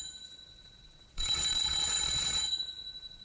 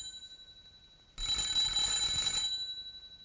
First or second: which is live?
second